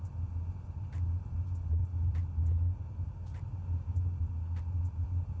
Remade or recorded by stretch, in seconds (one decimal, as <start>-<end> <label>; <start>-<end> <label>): 0.0-5.4 recorded